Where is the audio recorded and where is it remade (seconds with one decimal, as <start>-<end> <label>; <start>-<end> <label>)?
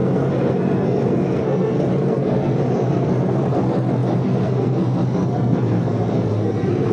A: 0.0-6.9 remade